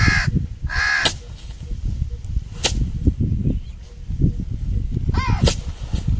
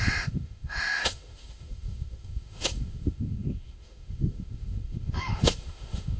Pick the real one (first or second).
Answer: first